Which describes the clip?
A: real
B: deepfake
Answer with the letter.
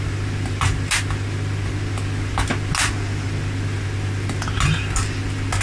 A